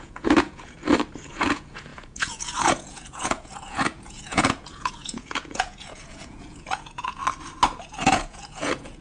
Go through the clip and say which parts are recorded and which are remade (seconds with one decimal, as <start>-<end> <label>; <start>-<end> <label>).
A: 0.0-0.8 remade; 0.8-1.3 recorded; 1.3-7.2 remade; 7.2-7.8 recorded; 7.8-9.0 remade